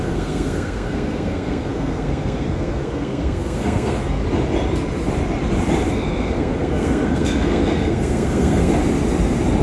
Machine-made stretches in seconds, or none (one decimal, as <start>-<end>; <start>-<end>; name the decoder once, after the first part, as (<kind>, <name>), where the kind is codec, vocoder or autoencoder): 0.0-4.2 (codec, SNAC); 5.9-8.7